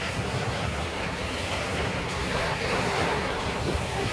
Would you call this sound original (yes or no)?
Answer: no